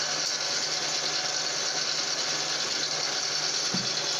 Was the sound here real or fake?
real